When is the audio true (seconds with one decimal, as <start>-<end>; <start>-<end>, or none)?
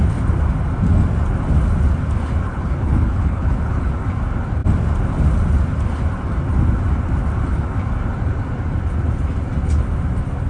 0.0-2.4; 3.9-10.5